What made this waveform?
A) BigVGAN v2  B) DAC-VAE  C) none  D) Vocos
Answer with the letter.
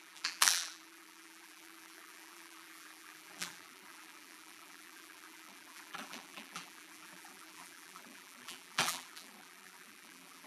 A